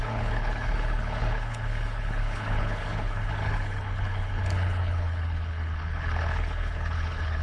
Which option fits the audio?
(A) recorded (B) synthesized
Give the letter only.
B